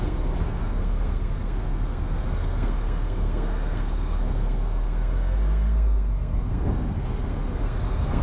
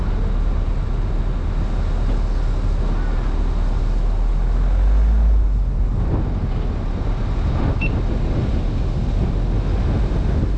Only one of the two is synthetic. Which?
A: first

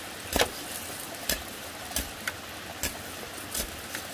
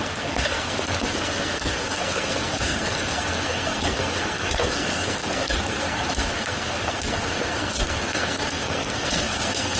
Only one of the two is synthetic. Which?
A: second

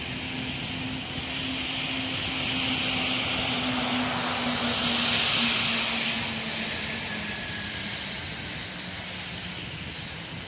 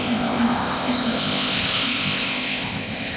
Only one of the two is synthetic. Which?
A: second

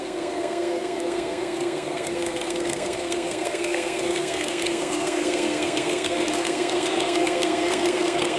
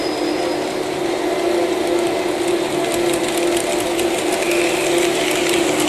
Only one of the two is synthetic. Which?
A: first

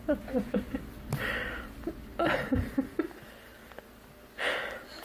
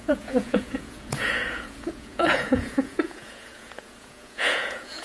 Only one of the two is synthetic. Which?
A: second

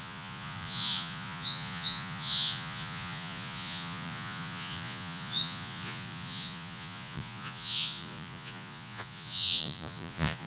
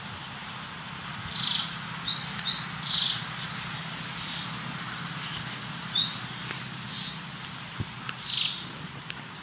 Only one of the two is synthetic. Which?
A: first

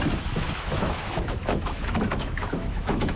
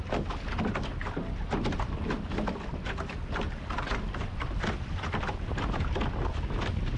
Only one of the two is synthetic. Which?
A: first